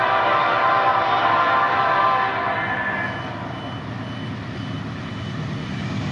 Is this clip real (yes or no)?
yes